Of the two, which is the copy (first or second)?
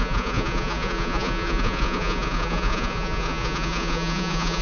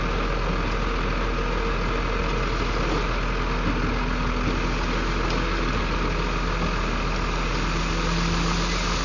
first